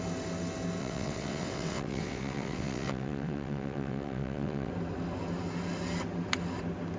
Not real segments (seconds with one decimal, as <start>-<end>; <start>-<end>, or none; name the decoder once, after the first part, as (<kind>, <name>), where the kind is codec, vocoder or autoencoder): 0.8-4.7 (vocoder, WaveNeXt)